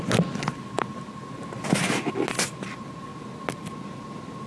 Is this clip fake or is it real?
real